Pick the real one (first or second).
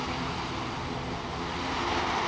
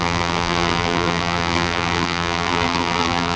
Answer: first